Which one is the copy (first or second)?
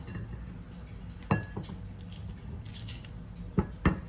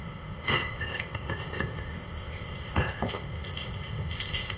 second